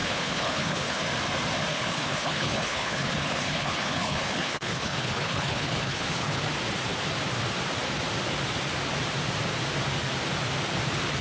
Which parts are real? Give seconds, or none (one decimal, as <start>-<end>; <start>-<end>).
1.0-1.7; 6.4-11.2